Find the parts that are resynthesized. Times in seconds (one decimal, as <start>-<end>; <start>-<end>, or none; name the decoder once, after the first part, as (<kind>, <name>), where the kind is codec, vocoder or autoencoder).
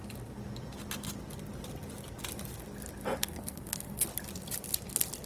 3.2-4.1 (codec, SNAC)